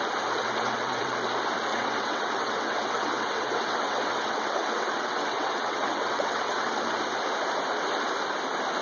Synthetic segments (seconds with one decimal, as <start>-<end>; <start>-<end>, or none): 0.4-1.1; 1.7-6.8